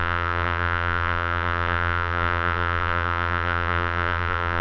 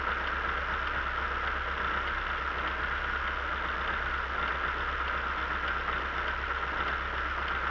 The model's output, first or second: first